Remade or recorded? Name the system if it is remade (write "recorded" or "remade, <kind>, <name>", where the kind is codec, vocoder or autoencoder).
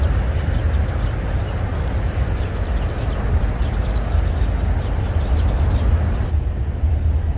recorded